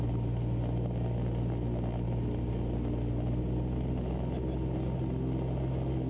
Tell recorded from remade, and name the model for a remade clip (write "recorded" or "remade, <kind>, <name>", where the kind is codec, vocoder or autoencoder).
recorded